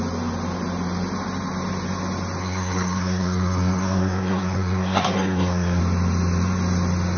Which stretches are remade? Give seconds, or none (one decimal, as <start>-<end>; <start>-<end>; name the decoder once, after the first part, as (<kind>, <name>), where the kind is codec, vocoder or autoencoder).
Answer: 2.4-5.8 (codec, SNAC)